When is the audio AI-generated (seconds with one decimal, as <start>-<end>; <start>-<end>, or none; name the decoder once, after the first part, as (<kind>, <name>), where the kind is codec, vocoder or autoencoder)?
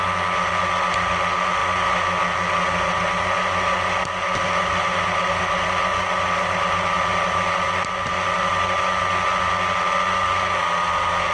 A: none